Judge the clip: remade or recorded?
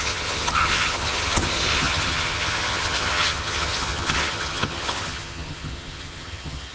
remade